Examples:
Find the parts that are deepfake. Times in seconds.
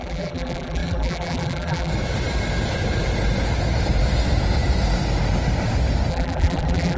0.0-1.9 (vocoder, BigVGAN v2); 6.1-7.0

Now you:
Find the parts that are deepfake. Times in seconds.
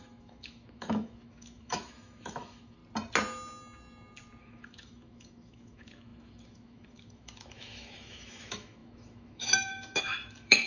0.0-2.8 (autoencoder, DAC-VAE); 4.4-10.7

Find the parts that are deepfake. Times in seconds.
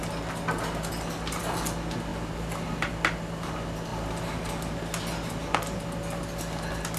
2.1-3.5 (vocoder, BigVGAN v2)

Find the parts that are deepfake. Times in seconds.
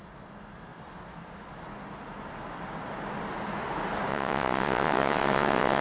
4.1-5.8 (vocoder, WaveNeXt)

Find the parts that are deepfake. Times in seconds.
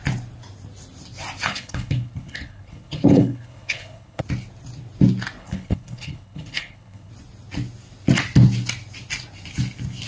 1.5-4.2 (codec, HILCodec); 5.4-7.1